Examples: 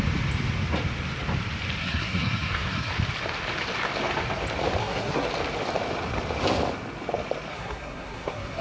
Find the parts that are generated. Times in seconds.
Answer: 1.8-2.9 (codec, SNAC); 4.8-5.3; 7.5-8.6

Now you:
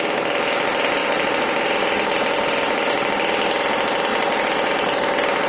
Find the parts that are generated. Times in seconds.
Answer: 1.0-1.8 (vocoder, BigVGAN v2); 4.1-5.5

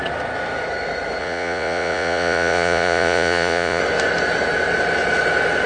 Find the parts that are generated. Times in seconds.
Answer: 1.2-3.8 (vocoder, Vocos)

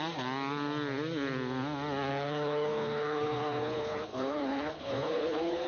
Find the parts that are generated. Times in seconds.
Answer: 2.1-5.7 (codec, HILCodec)

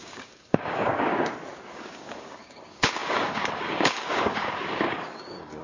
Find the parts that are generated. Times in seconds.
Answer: 0.0-1.1 (codec, DAC); 1.7-5.6

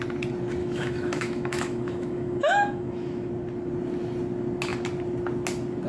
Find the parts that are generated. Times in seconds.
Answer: 0.6-3.3 (autoencoder, DAC-VAE)